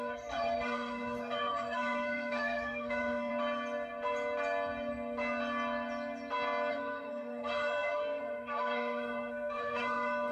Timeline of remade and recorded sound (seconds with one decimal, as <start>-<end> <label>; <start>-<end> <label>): 0.0-3.3 remade; 3.3-6.7 recorded; 6.7-10.3 remade